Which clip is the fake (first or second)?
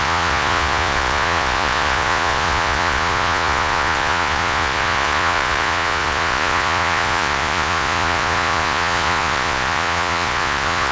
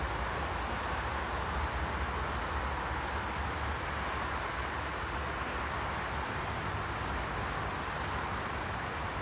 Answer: first